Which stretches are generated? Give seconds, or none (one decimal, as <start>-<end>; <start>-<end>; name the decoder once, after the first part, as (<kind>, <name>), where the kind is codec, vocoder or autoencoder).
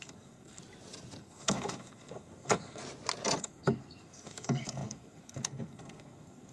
0.0-0.6 (codec, SNAC); 1.2-2.8; 3.4-6.5